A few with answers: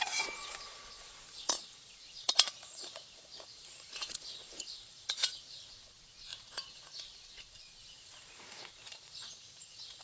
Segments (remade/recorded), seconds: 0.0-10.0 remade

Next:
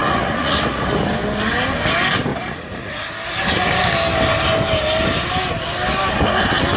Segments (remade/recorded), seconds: 0.0-0.8 remade; 0.8-2.3 recorded; 2.3-3.1 remade; 3.1-6.8 recorded

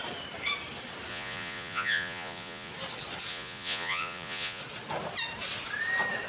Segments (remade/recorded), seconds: 0.0-1.1 recorded; 1.1-2.7 remade; 2.7-3.3 recorded; 3.3-4.6 remade; 4.6-6.3 recorded

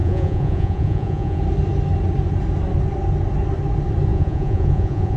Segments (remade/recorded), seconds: 0.0-1.4 remade; 1.4-4.1 recorded; 4.1-5.2 remade

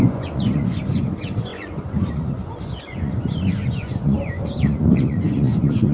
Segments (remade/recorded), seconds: 0.0-5.9 remade

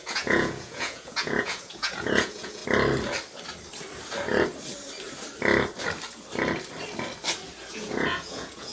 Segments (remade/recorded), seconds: 0.0-2.6 remade; 2.6-7.7 recorded; 7.7-8.7 remade

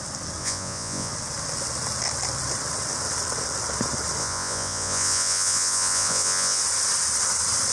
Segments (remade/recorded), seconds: 0.0-0.4 recorded; 0.4-1.1 remade; 1.1-4.2 recorded; 4.2-6.6 remade; 6.6-7.7 recorded